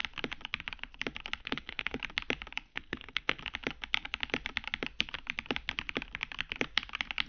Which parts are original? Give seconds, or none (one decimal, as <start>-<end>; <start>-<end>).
0.0-1.4; 2.0-2.7; 3.4-7.3